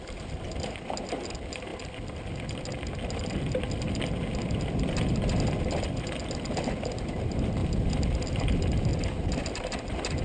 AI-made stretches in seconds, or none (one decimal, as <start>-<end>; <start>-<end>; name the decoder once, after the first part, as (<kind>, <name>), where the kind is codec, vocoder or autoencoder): none